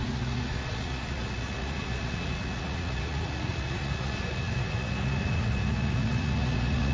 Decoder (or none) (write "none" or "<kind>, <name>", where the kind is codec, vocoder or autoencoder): vocoder, Vocos